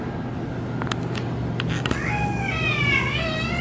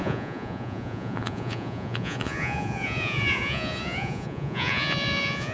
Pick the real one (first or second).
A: first